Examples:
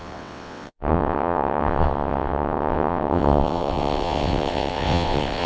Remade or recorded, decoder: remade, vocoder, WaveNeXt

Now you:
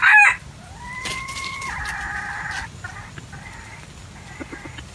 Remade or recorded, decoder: recorded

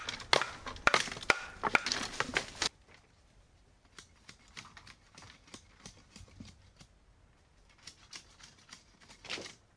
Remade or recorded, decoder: recorded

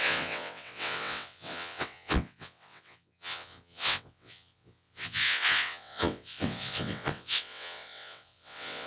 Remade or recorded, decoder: remade, vocoder, WaveNeXt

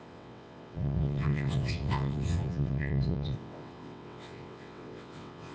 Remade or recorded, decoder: remade, vocoder, WaveNeXt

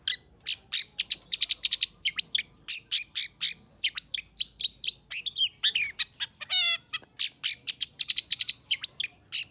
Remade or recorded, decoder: recorded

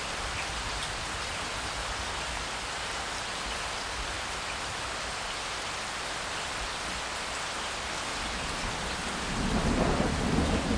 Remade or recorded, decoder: recorded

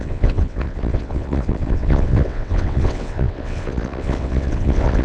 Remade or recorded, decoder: remade, vocoder, WaveNeXt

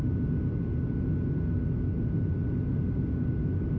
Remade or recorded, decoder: recorded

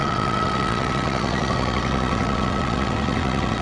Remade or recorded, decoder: remade, vocoder, WaveNeXt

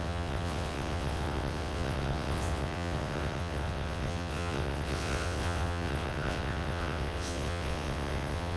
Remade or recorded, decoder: remade, vocoder, WaveNeXt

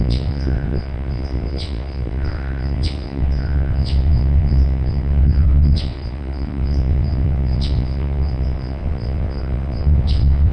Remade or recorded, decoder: remade, vocoder, WaveNeXt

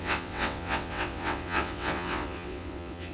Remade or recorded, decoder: remade, vocoder, WaveNeXt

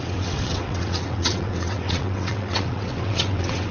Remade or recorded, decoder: remade, vocoder, WaveNeXt